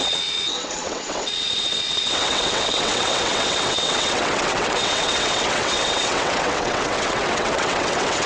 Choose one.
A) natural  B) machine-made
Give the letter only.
B